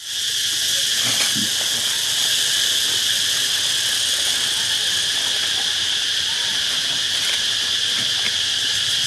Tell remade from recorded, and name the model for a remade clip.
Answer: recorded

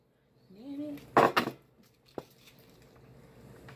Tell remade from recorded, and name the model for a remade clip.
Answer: recorded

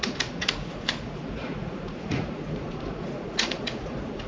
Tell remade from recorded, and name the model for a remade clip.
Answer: remade, vocoder, Vocos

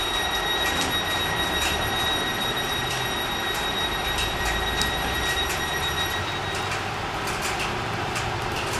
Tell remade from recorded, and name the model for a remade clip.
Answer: remade, vocoder, BigVGAN v2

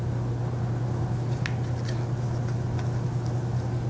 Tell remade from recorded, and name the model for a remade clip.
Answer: recorded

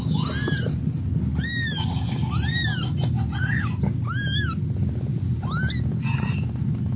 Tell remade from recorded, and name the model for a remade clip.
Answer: recorded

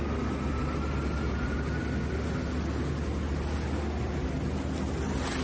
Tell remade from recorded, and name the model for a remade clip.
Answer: recorded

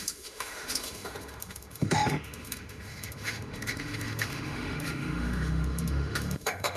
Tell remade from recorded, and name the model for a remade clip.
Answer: remade, autoencoder, DAC-VAE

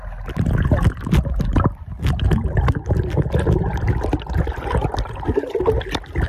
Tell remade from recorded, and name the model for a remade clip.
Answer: recorded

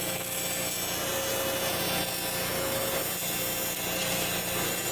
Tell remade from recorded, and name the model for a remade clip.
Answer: recorded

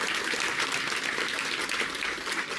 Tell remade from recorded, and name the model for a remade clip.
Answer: recorded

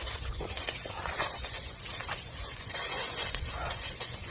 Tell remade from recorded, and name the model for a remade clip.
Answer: remade, vocoder, Vocos